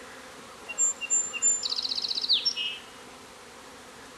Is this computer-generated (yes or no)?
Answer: no